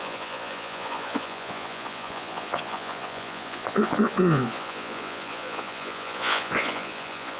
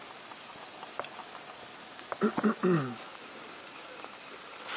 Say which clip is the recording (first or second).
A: second